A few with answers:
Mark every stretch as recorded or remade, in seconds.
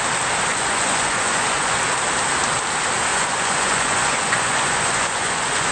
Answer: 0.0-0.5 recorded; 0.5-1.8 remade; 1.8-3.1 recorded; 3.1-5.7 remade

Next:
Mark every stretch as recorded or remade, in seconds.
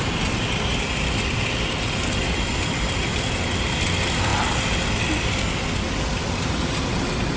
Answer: 0.0-7.4 recorded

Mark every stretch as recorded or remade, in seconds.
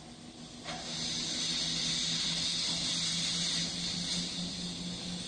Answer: 0.0-5.3 recorded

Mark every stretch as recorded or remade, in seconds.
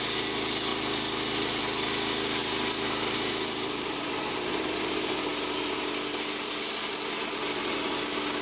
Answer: 0.0-2.4 recorded; 2.4-4.7 remade; 4.7-8.4 recorded